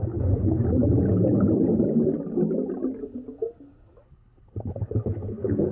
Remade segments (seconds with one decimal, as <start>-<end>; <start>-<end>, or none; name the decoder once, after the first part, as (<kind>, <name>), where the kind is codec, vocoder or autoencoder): 0.0-0.6 (codec, HILCodec); 4.0-5.7